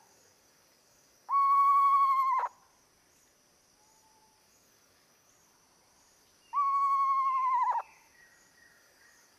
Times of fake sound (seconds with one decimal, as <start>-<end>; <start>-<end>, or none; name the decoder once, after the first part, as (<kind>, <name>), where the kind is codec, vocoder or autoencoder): 0.0-2.2 (codec, DAC); 4.4-5.3; 8.7-9.4